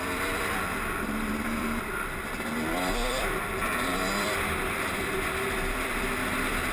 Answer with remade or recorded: remade